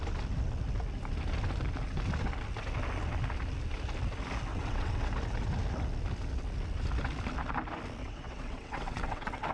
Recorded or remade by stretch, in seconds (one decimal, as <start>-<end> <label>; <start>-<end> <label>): 0.0-4.5 recorded; 4.5-5.1 remade; 5.1-8.0 recorded; 8.0-9.5 remade